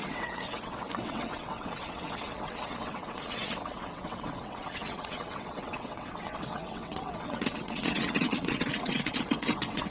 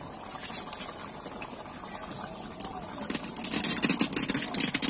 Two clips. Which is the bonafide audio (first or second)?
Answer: second